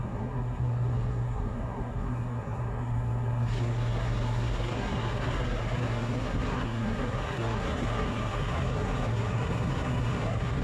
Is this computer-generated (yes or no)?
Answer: yes